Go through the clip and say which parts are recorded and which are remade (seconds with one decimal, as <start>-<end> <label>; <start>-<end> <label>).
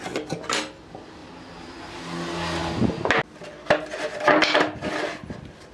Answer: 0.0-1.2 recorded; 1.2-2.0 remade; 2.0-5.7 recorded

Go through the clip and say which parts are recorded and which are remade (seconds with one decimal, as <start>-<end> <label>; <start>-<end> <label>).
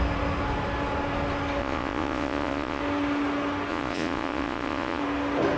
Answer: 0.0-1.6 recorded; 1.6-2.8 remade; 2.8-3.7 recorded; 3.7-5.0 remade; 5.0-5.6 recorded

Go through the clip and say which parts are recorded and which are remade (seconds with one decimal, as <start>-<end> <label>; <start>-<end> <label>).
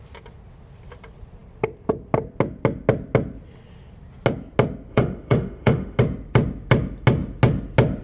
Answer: 0.0-4.9 recorded; 4.9-6.0 remade; 6.0-8.0 recorded